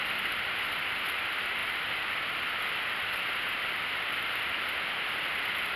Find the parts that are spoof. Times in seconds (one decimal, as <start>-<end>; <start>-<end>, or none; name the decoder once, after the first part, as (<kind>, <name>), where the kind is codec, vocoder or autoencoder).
none